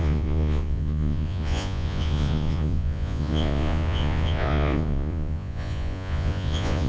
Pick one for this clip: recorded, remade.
remade